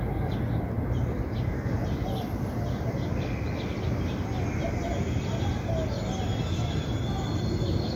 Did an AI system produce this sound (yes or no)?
no